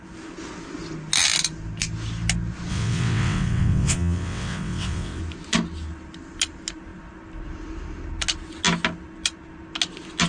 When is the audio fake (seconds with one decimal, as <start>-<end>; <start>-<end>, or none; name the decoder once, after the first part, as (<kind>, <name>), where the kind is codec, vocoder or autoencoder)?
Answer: 2.7-5.2 (vocoder, WaveNeXt)